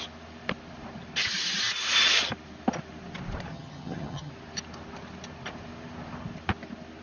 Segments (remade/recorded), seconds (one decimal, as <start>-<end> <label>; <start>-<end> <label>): 0.0-3.5 recorded; 3.5-4.3 remade; 4.3-7.0 recorded